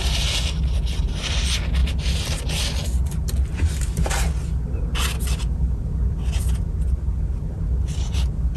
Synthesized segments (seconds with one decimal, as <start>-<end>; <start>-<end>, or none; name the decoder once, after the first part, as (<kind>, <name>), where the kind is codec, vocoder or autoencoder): none

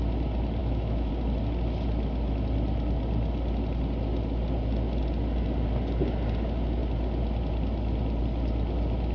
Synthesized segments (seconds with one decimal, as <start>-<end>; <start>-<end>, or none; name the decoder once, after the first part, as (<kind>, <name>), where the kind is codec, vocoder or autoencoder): 0.6-1.1 (autoencoder, DAC-VAE)

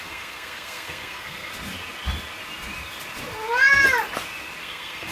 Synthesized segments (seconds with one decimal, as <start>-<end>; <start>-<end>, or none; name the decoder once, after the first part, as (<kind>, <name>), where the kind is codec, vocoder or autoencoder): 0.0-1.5 (codec, SNAC); 4.6-5.1

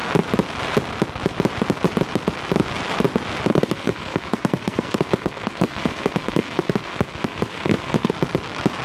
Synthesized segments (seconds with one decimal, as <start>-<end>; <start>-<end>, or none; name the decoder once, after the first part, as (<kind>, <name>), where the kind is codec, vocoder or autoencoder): 3.5-8.1 (codec, SNAC)

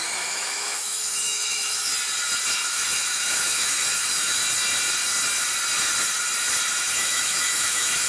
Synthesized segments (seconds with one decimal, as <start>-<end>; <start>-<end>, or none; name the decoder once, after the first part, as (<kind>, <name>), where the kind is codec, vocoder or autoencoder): 0.0-1.9 (autoencoder, DAC-VAE); 2.7-4.4; 6.9-8.1

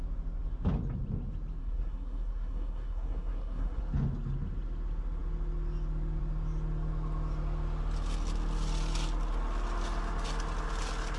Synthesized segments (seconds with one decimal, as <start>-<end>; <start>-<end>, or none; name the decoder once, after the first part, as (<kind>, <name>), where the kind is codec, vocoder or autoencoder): 1.6-3.8 (codec, SNAC)

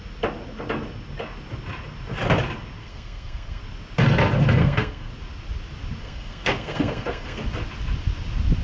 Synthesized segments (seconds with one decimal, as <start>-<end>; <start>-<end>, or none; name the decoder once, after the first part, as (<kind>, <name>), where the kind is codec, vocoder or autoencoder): 2.8-3.6 (codec, SNAC); 4.6-5.1; 6.0-7.4